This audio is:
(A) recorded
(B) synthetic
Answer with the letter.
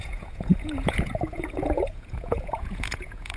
B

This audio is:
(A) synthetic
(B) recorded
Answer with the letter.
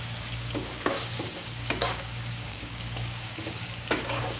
A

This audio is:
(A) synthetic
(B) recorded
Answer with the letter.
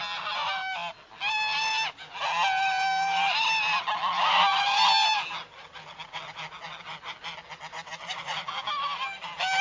B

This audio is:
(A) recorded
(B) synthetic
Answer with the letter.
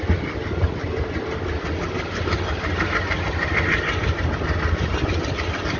A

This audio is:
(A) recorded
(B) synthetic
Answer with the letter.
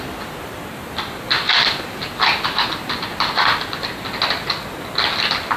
A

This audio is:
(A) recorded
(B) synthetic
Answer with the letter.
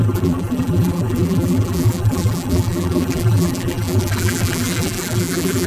B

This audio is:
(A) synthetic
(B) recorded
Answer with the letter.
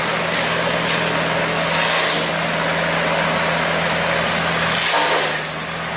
B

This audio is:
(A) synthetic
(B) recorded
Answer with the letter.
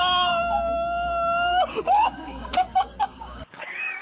A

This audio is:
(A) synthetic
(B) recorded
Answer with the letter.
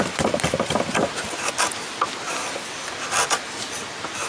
B